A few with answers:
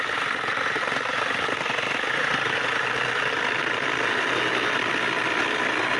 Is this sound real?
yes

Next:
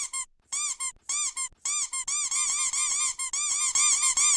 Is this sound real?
yes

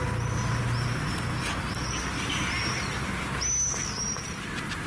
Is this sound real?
yes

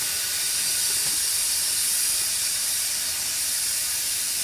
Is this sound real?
yes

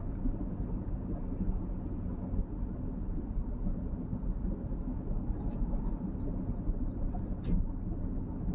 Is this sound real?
yes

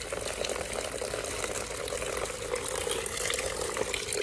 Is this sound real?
yes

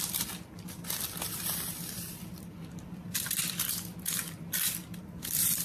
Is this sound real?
no